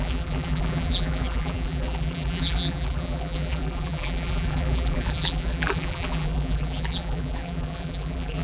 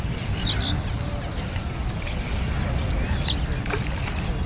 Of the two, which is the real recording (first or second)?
second